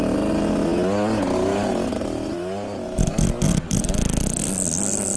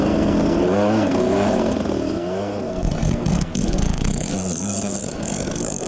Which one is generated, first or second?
second